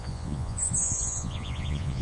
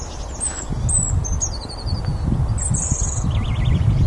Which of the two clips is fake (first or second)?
first